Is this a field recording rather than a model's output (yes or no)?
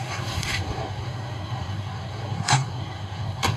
no